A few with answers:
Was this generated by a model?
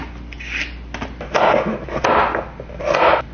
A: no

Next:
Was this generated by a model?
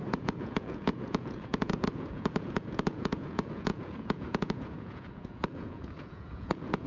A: yes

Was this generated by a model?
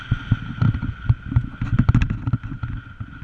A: no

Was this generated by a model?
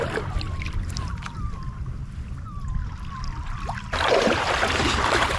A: yes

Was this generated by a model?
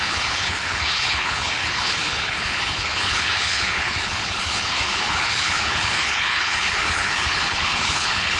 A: yes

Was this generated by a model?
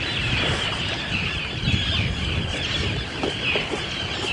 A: no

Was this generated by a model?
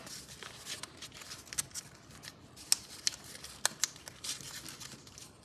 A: no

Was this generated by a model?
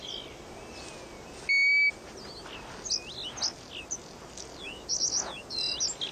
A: no